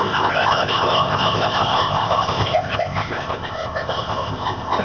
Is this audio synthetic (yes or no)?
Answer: yes